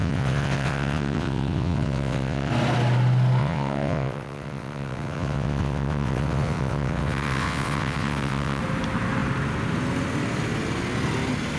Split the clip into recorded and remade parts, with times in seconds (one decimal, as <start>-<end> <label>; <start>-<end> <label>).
0.0-2.5 remade; 2.5-3.4 recorded; 3.4-8.6 remade; 8.6-11.6 recorded